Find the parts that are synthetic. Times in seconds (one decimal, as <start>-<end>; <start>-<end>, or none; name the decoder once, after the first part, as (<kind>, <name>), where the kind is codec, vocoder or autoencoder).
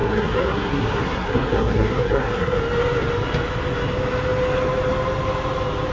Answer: 0.0-2.6 (codec, SNAC)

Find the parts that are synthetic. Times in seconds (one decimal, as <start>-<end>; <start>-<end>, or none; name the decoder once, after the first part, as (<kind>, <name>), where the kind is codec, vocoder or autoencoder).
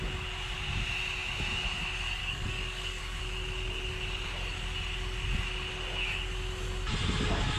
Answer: 2.2-3.2 (codec, DAC)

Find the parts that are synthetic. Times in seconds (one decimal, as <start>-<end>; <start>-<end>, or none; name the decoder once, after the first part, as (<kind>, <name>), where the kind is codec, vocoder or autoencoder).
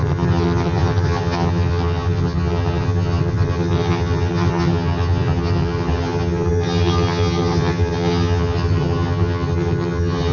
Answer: 0.0-10.3 (vocoder, HiFi-GAN)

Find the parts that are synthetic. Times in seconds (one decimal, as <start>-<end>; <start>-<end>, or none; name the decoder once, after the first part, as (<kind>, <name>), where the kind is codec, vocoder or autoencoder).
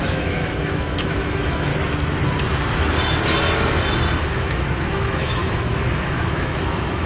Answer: 0.0-1.7 (autoencoder, DAC-VAE); 4.2-7.1